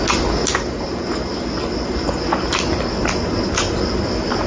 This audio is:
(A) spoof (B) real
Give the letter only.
B